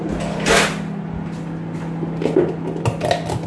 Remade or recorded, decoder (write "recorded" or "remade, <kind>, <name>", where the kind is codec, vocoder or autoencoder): recorded